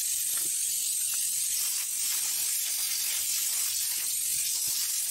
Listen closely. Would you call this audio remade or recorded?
recorded